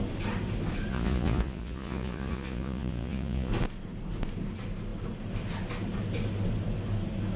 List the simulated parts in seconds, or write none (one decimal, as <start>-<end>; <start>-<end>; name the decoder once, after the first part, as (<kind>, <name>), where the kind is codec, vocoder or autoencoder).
0.9-3.5 (vocoder, Vocos)